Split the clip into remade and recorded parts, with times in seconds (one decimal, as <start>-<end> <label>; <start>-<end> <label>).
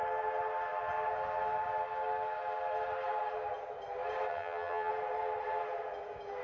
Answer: 0.0-4.3 recorded; 4.3-4.9 remade; 4.9-6.4 recorded